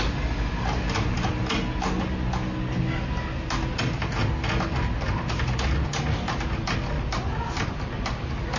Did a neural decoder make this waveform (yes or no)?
no